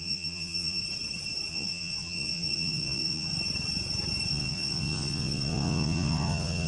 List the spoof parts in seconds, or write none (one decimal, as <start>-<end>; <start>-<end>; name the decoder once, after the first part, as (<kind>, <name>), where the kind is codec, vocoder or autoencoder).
0.0-0.8 (vocoder, Vocos); 1.5-3.3; 4.3-6.7